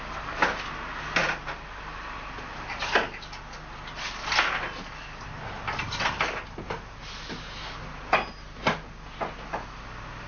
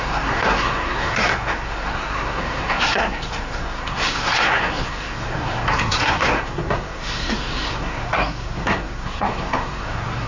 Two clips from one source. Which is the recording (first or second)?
first